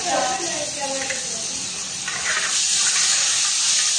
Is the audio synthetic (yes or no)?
no